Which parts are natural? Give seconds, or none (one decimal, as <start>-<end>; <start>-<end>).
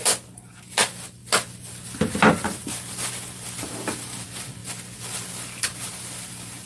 0.0-6.7